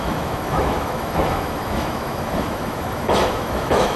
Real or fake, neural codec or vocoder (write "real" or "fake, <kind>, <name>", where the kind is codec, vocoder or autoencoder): fake, autoencoder, DAC-VAE